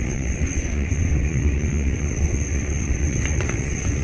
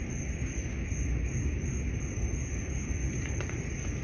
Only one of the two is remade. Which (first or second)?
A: first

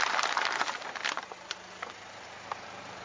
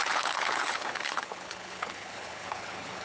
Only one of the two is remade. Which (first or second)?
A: second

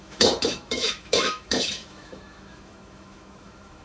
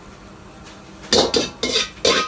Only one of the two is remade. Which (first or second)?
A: first